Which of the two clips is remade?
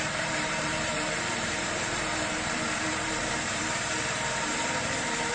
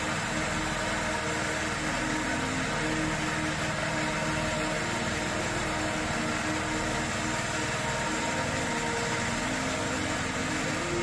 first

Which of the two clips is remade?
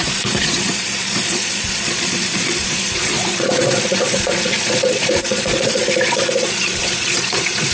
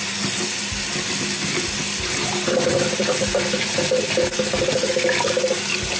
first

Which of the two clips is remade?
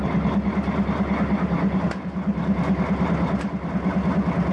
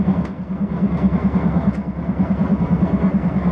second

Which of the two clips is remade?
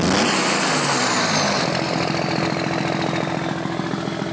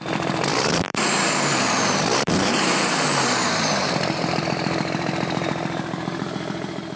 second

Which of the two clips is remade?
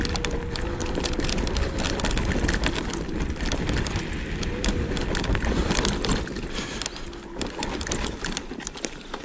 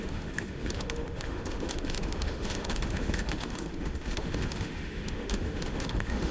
second